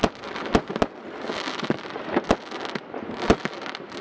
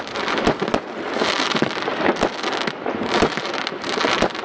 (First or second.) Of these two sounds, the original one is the first